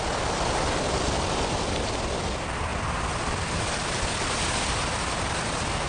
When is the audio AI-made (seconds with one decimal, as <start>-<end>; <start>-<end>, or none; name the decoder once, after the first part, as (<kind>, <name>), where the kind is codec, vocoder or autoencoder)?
none